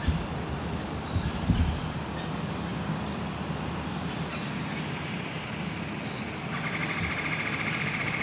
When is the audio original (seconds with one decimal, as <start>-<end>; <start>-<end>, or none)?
0.0-8.2